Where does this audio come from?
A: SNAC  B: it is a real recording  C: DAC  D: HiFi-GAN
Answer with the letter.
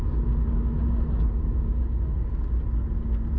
B